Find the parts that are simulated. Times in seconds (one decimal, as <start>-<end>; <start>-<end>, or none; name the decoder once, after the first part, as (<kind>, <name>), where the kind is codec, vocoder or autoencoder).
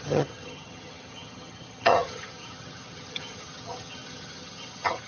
0.0-5.1 (vocoder, HiFi-GAN)